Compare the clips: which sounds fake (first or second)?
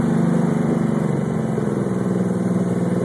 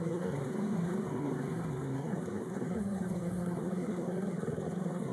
second